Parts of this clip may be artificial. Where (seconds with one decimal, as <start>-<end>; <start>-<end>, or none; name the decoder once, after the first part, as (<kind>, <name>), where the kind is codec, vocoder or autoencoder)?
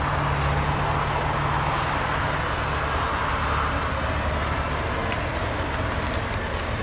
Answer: none